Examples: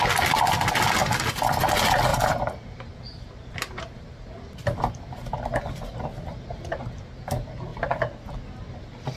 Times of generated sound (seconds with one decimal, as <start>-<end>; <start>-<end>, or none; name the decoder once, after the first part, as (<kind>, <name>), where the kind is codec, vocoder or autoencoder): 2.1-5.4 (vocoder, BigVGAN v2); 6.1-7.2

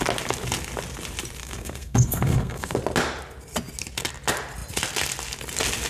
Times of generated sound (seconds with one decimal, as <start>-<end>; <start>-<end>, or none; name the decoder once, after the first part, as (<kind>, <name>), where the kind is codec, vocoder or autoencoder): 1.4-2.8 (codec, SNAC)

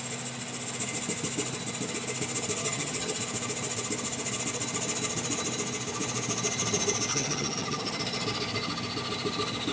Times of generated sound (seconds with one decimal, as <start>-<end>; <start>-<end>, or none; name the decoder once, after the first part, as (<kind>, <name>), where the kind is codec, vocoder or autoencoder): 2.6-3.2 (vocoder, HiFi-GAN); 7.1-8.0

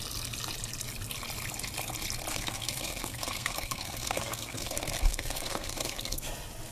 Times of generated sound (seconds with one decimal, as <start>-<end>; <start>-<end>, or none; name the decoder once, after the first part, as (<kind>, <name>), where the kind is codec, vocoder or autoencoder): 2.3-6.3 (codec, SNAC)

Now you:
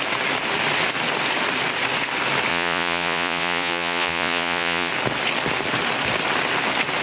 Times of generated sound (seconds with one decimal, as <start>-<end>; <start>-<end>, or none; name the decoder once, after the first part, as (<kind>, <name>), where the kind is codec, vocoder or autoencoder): 2.5-4.9 (vocoder, Vocos)

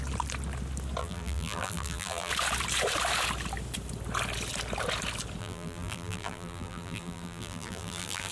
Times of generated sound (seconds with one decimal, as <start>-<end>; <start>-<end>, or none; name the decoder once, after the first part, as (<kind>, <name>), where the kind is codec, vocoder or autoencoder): 1.0-2.3 (vocoder, BigVGAN v2); 5.4-8.3

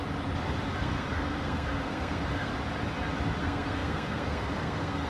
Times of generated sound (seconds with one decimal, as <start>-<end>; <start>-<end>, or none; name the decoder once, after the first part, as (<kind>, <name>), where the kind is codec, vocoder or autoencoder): 0.8-2.5 (codec, SNAC); 3.4-5.1